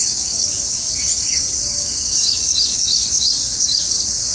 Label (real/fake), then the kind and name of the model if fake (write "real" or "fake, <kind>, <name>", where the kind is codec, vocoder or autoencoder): fake, codec, DAC